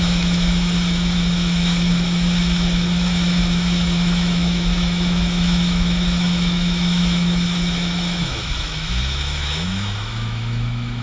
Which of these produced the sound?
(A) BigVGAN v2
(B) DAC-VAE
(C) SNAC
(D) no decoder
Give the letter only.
B